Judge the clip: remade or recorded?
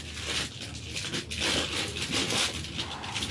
recorded